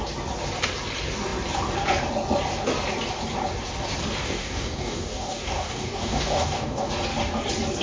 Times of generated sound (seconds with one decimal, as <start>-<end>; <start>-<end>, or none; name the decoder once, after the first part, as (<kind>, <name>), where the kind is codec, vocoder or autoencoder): 4.2-6.9 (codec, DAC)